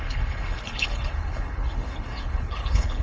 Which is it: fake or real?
fake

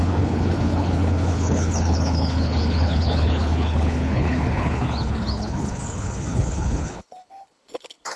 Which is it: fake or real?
fake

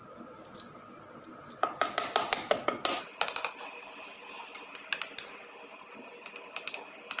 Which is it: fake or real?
real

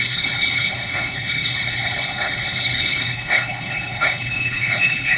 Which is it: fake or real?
fake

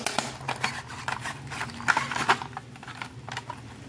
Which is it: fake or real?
real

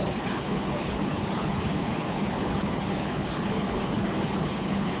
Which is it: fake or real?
fake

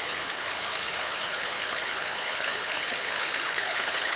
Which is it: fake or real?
fake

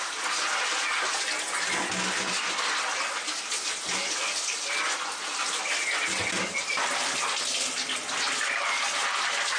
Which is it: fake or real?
real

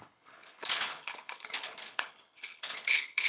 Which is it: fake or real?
fake